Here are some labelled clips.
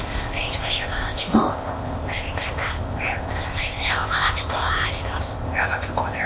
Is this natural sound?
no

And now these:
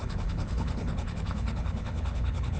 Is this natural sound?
no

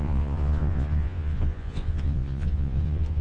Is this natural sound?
no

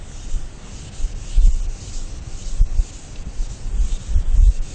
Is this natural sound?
yes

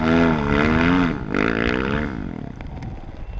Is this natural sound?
yes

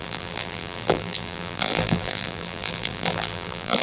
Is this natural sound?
no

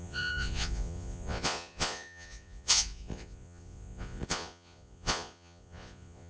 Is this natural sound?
no